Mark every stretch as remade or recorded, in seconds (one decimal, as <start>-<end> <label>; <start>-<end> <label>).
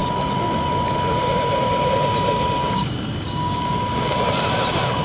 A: 0.0-2.6 recorded; 2.6-4.2 remade; 4.2-5.0 recorded